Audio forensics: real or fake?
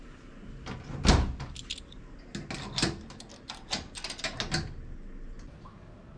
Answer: real